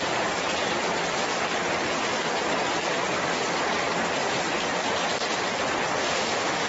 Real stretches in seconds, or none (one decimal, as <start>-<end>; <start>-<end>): 0.0-6.0